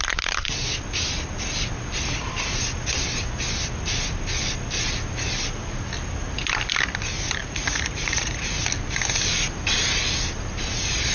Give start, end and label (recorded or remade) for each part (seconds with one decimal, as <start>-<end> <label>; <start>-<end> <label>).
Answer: 0.0-7.4 recorded; 7.4-8.6 remade; 8.6-11.1 recorded

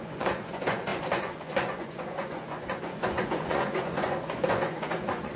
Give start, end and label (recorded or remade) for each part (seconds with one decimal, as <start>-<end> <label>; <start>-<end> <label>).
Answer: 0.0-5.4 remade

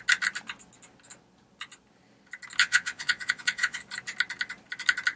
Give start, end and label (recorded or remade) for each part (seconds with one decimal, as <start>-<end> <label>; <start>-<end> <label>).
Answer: 0.0-2.6 recorded; 2.6-3.8 remade; 3.8-5.2 recorded

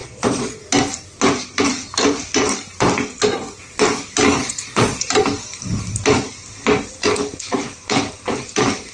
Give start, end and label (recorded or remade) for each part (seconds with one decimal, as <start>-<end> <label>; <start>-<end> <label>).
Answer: 0.0-0.6 remade; 0.6-4.4 recorded; 4.4-5.1 remade; 5.1-8.9 recorded

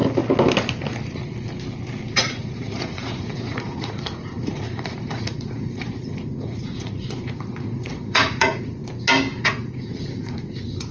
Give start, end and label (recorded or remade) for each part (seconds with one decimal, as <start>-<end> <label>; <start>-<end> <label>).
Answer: 0.0-2.1 recorded; 2.1-8.8 remade; 8.8-9.4 recorded; 9.4-10.9 remade

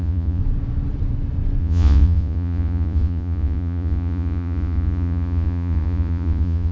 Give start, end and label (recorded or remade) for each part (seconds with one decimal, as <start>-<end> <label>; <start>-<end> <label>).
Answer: 0.0-0.4 remade; 0.4-1.6 recorded; 1.6-6.7 remade